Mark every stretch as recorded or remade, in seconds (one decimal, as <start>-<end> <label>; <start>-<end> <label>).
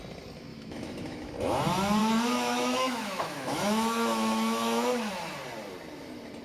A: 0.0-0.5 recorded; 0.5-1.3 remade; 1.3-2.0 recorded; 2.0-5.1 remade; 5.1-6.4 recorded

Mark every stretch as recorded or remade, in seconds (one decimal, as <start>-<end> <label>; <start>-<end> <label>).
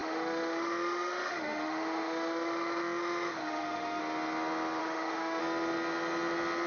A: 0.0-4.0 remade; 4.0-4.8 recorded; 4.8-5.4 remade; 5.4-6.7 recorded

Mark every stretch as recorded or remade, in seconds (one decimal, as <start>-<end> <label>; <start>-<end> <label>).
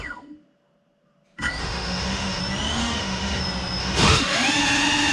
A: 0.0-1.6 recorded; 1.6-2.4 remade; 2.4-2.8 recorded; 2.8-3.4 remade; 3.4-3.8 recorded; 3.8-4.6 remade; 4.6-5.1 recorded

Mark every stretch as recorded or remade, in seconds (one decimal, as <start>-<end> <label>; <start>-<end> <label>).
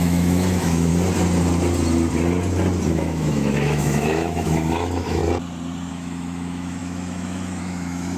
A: 0.0-0.9 remade; 0.9-2.9 recorded; 2.9-5.2 remade; 5.2-5.9 recorded; 5.9-8.2 remade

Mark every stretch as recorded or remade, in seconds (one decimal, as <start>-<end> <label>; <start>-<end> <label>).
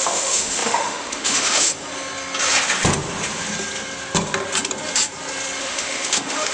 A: 0.0-1.7 remade; 1.7-5.6 recorded; 5.6-6.5 remade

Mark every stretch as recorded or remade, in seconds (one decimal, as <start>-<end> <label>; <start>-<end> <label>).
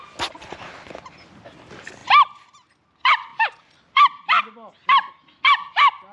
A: 0.0-6.1 recorded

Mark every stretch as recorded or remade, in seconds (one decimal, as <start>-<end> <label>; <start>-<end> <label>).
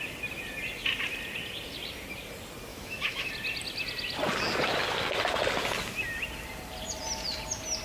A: 0.0-2.7 recorded; 2.7-3.3 remade; 3.3-7.8 recorded